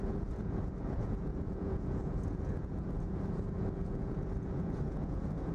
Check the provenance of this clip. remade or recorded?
remade